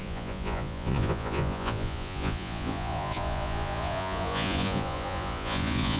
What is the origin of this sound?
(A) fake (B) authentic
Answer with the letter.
A